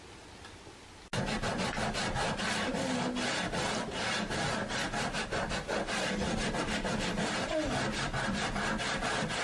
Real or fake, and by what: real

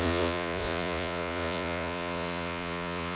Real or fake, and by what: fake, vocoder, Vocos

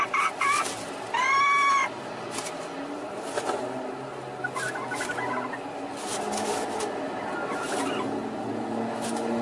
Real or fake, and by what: real